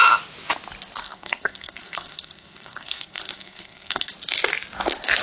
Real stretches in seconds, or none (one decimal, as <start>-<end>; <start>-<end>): 0.0-1.0; 4.1-5.2